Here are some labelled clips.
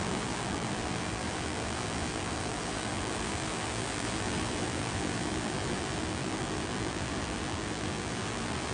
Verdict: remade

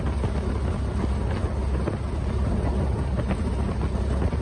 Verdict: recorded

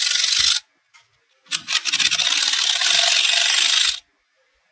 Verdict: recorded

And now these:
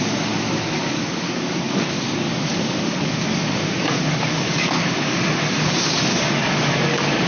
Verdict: remade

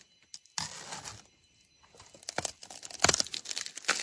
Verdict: recorded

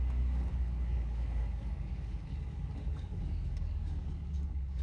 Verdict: remade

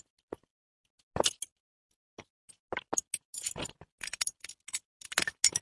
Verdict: recorded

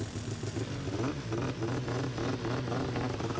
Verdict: recorded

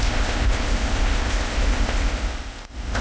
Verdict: remade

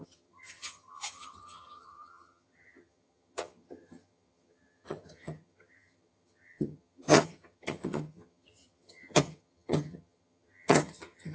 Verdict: remade